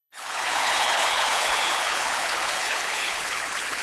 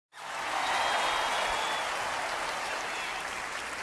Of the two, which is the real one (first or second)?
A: second